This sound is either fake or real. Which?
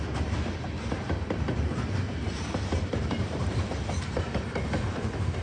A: fake